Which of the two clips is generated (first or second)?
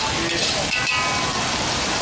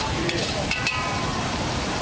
second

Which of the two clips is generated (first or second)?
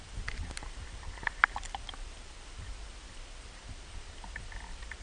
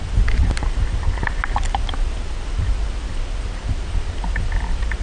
first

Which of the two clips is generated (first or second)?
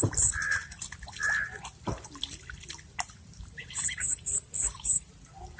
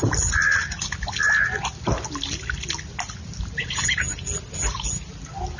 first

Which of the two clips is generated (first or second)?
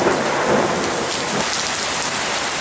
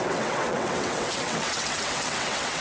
second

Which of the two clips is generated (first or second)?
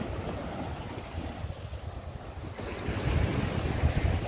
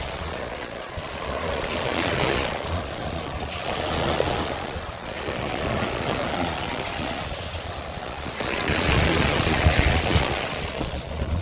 second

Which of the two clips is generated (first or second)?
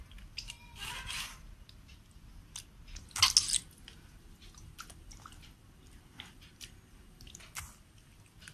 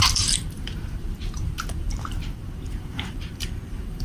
second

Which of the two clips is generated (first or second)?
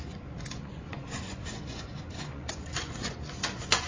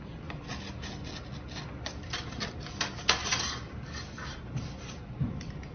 first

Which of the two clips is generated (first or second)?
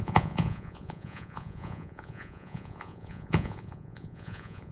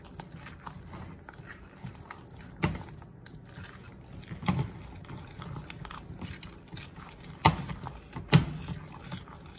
first